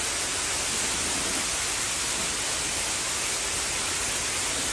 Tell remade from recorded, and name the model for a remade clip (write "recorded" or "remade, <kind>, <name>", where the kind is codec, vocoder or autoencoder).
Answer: recorded